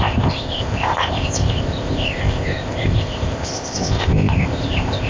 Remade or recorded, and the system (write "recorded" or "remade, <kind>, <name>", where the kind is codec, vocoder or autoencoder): remade, codec, ZipCodec